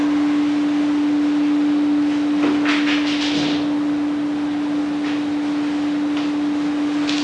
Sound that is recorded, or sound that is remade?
recorded